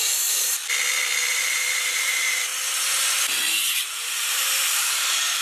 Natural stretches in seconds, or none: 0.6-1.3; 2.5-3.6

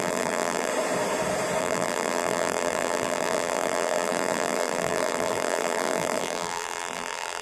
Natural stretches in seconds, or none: 0.7-1.6

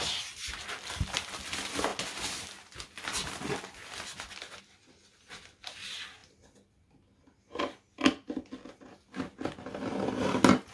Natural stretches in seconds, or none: 0.0-10.7

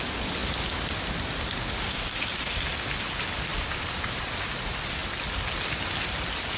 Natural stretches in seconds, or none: 0.0-3.5; 4.2-6.6

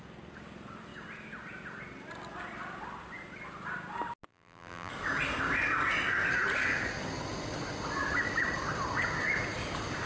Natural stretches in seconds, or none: 0.0-4.3; 4.9-10.1

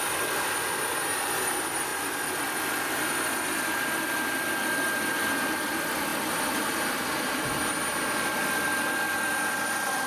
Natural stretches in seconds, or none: 6.1-8.2